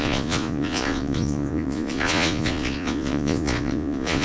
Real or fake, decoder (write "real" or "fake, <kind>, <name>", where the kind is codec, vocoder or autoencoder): fake, vocoder, Vocos